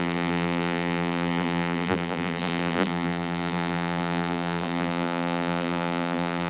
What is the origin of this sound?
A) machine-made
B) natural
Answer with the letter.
A